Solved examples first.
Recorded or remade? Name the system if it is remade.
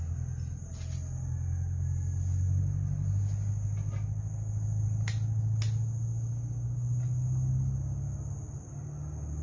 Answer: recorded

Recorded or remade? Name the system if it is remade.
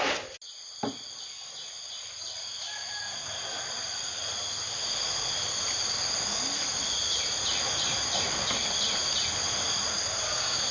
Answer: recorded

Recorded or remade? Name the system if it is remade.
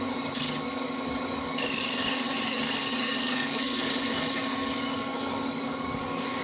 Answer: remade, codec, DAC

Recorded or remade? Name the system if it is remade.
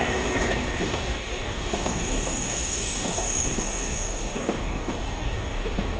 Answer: remade, codec, DAC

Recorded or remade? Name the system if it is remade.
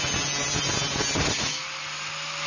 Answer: recorded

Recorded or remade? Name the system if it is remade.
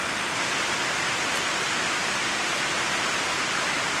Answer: recorded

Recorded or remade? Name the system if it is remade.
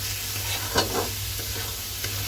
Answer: recorded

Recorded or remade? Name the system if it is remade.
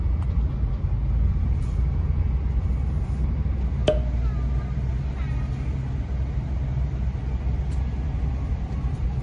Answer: recorded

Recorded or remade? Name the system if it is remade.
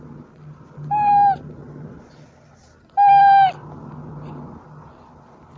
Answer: recorded